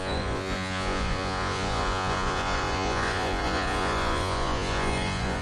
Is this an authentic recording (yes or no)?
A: no